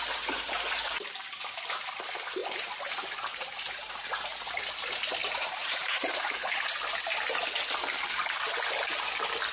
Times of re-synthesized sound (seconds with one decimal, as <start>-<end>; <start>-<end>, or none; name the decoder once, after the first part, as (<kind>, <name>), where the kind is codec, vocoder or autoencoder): 2.4-3.9 (vocoder, BigVGAN v2); 5.2-6.4